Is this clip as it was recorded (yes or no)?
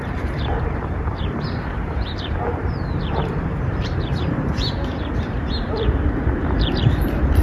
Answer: no